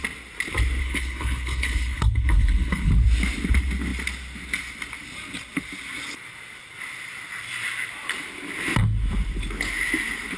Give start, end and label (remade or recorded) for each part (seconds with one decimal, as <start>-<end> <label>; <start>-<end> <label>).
0.0-0.8 recorded; 0.8-2.9 remade; 2.9-10.4 recorded